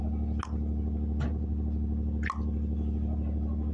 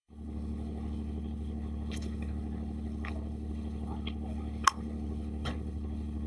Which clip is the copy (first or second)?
second